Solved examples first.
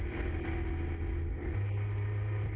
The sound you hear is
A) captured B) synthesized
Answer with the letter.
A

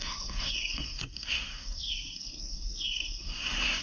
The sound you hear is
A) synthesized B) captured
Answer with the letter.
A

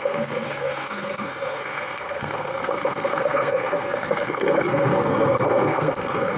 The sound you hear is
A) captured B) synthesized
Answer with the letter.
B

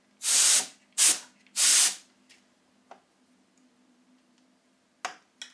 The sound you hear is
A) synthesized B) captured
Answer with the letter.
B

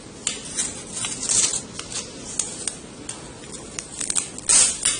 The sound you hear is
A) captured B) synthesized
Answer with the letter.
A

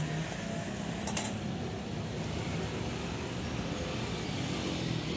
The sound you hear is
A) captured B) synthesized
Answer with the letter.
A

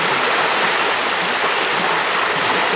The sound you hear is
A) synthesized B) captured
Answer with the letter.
B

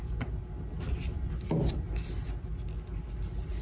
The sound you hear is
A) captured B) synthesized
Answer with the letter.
A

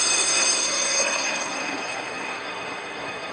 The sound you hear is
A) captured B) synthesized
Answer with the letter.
B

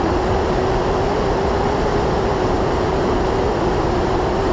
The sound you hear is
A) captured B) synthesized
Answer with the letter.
A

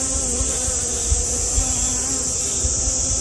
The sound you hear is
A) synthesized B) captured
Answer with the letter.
B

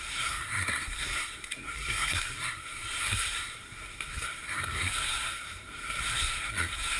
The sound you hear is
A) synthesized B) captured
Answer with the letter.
A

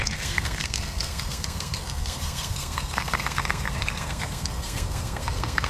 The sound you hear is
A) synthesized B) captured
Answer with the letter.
A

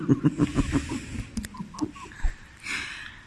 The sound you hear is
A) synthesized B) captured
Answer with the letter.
B